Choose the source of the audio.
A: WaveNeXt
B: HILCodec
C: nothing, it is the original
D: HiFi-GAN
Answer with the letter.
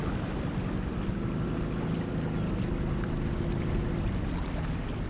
C